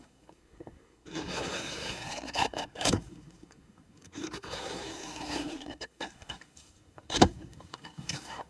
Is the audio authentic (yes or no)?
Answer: no